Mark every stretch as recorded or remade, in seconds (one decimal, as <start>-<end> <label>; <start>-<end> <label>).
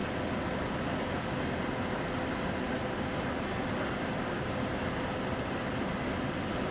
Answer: 0.0-6.7 recorded